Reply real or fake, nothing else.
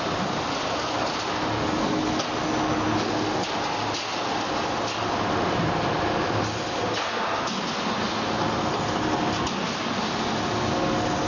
real